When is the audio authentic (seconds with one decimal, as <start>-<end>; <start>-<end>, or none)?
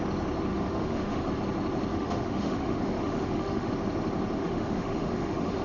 0.0-0.5; 1.3-1.9; 3.7-4.4